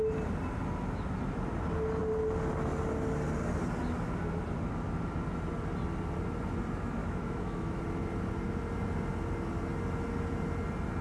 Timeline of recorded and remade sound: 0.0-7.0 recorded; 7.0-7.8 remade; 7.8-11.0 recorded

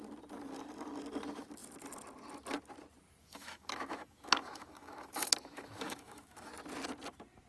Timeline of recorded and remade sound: 0.0-3.2 recorded; 3.2-6.5 remade; 6.5-7.5 recorded

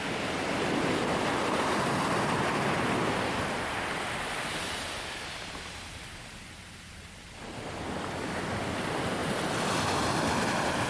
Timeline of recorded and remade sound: 0.0-10.9 recorded

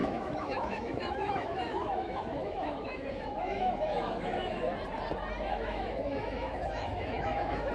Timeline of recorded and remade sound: 0.0-4.6 remade; 4.6-5.5 recorded; 5.5-7.7 remade

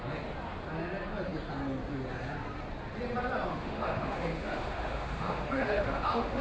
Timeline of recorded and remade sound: 0.0-3.5 recorded; 3.5-6.4 remade

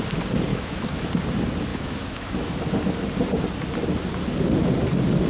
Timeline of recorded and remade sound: 0.0-0.5 recorded; 0.5-1.1 remade; 1.1-1.7 recorded; 1.7-2.5 remade; 2.5-5.3 recorded

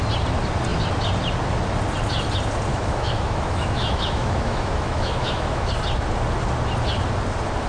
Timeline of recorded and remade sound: 0.0-2.7 recorded; 2.7-5.7 remade; 5.7-7.7 recorded

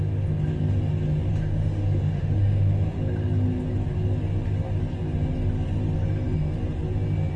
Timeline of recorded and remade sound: 0.0-1.3 recorded; 1.3-3.0 remade; 3.0-7.4 recorded